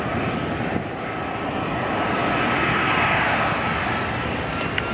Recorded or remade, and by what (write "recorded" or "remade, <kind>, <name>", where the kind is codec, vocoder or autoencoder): recorded